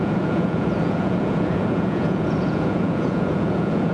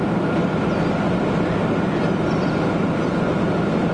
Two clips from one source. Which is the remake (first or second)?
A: first